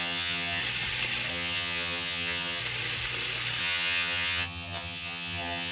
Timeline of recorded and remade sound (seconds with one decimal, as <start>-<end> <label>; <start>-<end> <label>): 0.0-0.6 remade; 0.6-1.3 recorded; 1.3-2.6 remade; 2.6-3.6 recorded; 3.6-5.7 remade